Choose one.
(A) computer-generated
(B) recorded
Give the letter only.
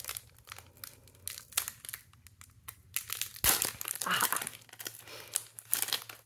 B